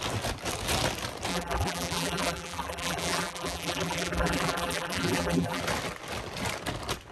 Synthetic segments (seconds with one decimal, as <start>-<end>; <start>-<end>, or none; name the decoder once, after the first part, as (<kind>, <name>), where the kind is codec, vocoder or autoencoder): 1.3-5.6 (vocoder, BigVGAN v2)